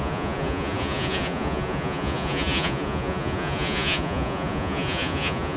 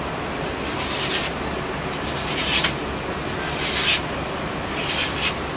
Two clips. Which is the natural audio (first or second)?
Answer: second